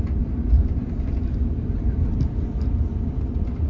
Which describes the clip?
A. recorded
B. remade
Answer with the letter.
A